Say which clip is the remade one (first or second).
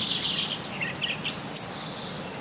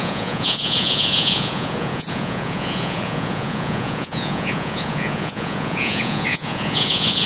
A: second